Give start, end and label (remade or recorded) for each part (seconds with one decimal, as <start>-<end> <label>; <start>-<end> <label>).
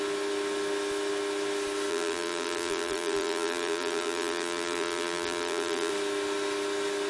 0.0-1.9 recorded; 1.9-5.9 remade; 5.9-7.1 recorded